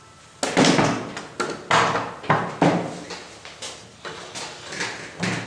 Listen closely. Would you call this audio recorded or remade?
recorded